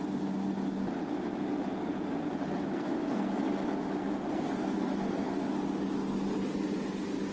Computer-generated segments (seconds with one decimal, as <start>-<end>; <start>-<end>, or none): 2.7-3.4; 4.0-5.5